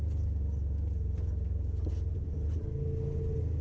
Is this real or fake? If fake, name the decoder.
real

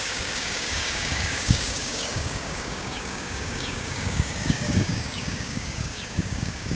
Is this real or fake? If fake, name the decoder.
fake, codec, DAC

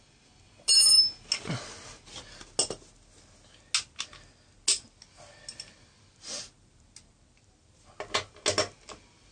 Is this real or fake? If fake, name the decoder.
real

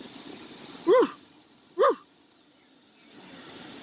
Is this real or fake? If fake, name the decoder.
real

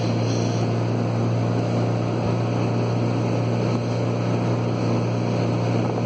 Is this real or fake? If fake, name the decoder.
real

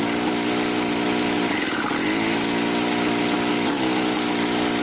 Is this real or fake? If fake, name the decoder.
real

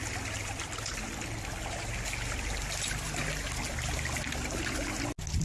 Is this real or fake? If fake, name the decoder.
real